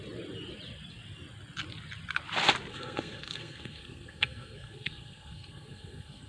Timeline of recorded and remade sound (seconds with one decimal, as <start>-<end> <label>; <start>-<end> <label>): 0.0-2.7 recorded; 2.7-6.3 remade